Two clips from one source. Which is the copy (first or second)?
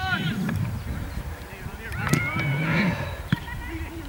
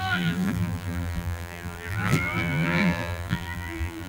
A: second